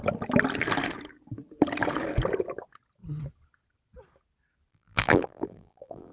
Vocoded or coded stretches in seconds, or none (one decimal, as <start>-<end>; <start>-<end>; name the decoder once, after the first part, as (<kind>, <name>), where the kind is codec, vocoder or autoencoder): 4.7-6.1 (vocoder, BigVGAN v2)